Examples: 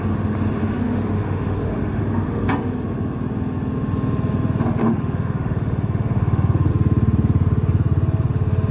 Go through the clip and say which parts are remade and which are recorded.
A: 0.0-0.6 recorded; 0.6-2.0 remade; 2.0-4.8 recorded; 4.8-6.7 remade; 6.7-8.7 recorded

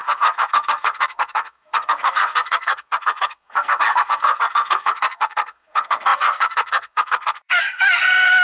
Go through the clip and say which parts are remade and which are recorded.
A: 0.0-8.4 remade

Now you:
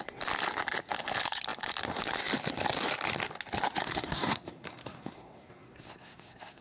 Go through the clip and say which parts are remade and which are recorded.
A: 0.0-3.8 recorded; 3.8-6.6 remade

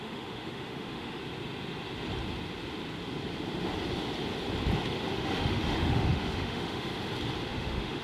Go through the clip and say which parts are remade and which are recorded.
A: 0.0-1.2 remade; 1.2-5.1 recorded; 5.1-6.9 remade; 6.9-7.5 recorded; 7.5-8.0 remade

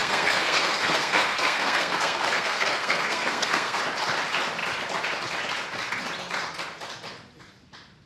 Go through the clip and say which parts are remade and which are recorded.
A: 0.0-3.8 remade; 3.8-8.1 recorded

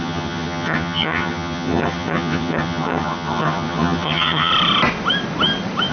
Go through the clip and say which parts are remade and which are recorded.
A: 0.0-4.5 remade; 4.5-5.9 recorded

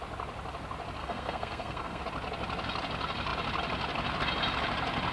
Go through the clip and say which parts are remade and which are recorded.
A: 0.0-1.0 recorded; 1.0-2.0 remade; 2.0-5.1 recorded

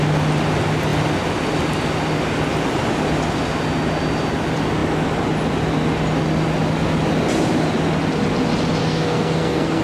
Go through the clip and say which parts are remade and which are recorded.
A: 0.0-8.8 recorded; 8.8-9.8 remade